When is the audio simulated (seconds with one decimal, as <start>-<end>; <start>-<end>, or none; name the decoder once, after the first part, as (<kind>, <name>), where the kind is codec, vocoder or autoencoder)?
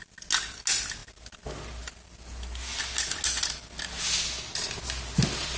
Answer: none